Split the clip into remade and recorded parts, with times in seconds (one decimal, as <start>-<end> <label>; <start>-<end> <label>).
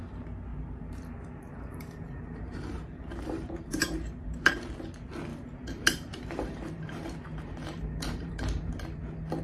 0.0-0.5 recorded; 0.5-4.5 remade; 4.5-5.3 recorded; 5.3-8.7 remade; 8.7-9.4 recorded